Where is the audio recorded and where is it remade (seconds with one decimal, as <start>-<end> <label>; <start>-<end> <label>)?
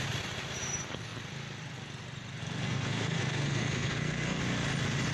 0.0-2.4 recorded; 2.4-4.4 remade; 4.4-5.1 recorded